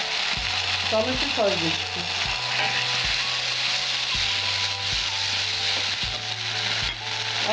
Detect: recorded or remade recorded